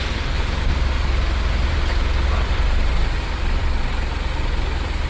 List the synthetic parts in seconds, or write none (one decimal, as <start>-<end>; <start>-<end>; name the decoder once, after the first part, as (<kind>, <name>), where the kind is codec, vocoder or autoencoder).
0.0-5.1 (vocoder, BigVGAN v2)